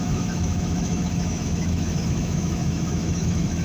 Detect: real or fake fake